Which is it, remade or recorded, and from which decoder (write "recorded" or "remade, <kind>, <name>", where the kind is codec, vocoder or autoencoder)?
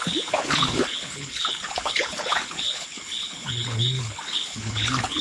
remade, codec, HILCodec